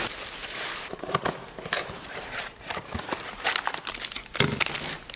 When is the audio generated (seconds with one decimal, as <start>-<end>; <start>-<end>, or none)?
0.4-3.5